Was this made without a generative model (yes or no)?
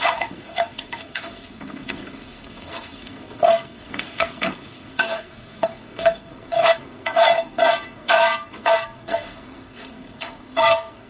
no